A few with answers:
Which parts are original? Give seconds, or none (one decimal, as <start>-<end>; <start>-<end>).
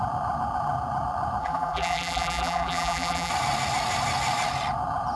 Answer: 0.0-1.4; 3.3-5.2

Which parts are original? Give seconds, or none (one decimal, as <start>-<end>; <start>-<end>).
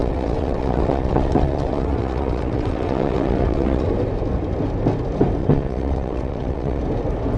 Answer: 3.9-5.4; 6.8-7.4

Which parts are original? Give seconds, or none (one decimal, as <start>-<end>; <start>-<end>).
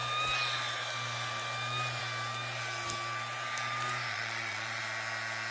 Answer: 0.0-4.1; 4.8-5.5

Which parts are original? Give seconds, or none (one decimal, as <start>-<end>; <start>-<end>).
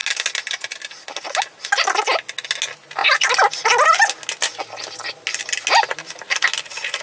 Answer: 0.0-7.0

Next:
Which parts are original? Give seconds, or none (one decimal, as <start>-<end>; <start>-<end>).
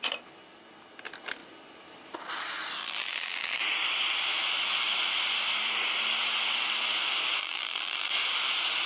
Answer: 0.0-2.8; 3.6-7.4; 8.1-8.9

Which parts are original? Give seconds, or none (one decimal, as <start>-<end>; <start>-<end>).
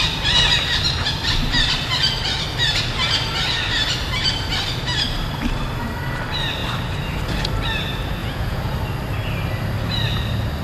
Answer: 0.0-8.2; 8.7-10.6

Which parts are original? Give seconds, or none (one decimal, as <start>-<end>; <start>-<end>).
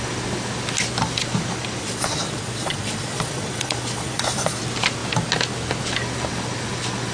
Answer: 0.0-1.8; 4.6-7.1